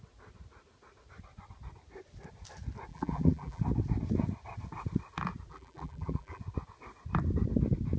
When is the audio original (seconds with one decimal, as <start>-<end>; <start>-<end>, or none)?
0.0-2.9; 3.6-5.5; 6.4-8.0